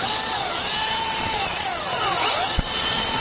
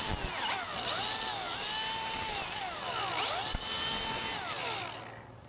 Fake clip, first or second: first